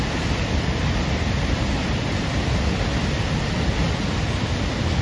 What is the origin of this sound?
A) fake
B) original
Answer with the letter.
B